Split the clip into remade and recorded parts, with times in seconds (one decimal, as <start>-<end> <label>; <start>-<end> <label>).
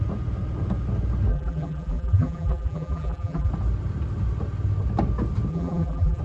0.0-1.3 recorded; 1.3-3.5 remade; 3.5-5.5 recorded; 5.5-6.2 remade